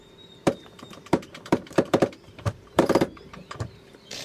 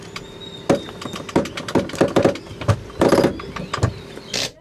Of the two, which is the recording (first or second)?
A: second